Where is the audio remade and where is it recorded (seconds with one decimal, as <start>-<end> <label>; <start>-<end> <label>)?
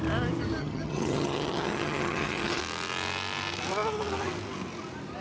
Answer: 0.0-0.6 recorded; 0.6-2.6 remade; 2.6-5.2 recorded